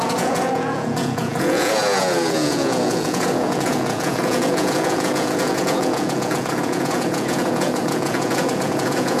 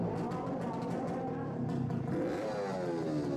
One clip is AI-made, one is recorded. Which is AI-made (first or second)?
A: first